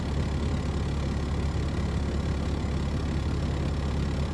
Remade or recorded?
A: recorded